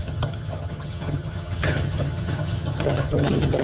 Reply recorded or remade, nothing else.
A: remade